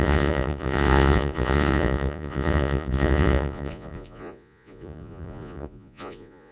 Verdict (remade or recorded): remade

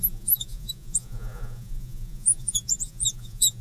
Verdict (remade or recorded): remade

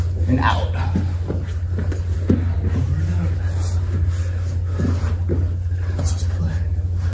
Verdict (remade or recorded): recorded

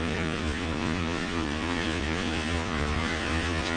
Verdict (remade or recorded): remade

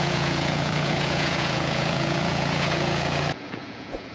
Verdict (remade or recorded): remade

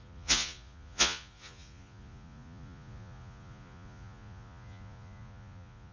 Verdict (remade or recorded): remade